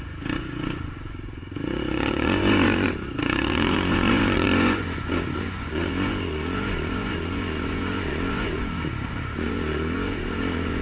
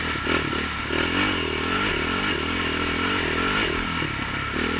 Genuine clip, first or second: second